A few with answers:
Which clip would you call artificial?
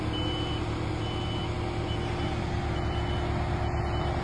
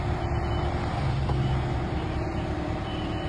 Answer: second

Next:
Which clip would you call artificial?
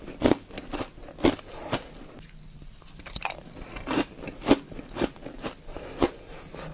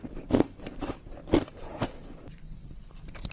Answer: second